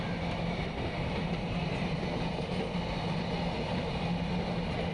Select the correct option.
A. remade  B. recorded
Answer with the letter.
B